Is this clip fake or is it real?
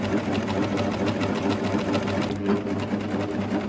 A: real